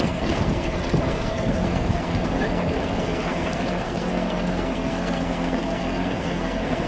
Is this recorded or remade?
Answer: remade